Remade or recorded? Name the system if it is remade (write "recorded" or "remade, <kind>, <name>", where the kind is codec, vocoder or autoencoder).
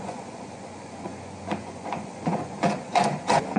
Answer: remade, vocoder, Vocos